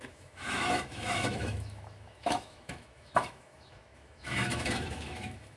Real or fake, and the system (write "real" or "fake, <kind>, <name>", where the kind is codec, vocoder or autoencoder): fake, autoencoder, DAC-VAE